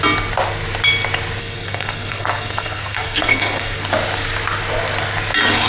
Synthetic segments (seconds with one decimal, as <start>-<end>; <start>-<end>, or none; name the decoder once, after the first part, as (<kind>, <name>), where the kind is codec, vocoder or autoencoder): 1.4-3.9 (codec, SNAC)